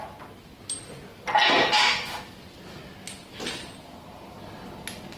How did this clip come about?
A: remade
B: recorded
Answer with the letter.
B